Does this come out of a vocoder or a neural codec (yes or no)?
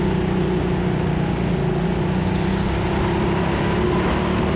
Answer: no